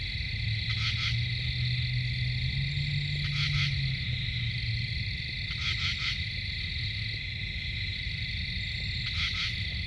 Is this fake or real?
real